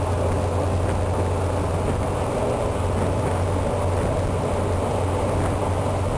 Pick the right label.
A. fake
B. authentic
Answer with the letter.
B